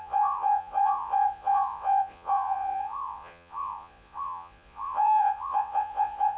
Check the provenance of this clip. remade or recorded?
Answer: remade